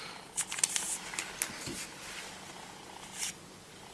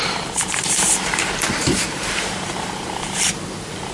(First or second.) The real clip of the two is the first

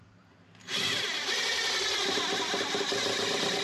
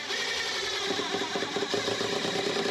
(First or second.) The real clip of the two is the second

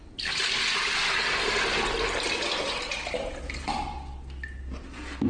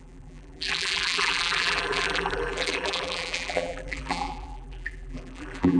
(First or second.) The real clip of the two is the first